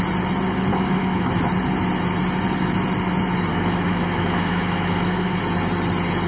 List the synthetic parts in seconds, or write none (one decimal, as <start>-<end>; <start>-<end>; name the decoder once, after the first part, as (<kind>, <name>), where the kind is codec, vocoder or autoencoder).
0.7-1.3 (autoencoder, DAC-VAE); 3.5-5.4